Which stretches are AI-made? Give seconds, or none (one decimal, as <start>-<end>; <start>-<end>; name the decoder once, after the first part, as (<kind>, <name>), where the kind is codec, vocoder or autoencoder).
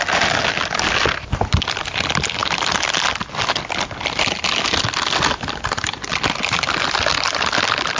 none